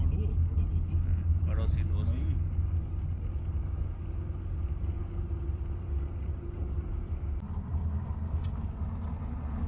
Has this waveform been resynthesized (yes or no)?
no